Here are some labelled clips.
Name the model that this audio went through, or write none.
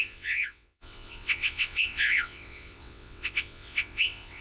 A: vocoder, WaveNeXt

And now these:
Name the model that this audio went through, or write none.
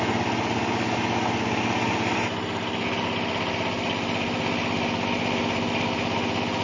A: none